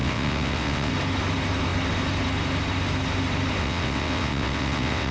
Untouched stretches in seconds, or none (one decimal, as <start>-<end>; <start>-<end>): 0.9-3.6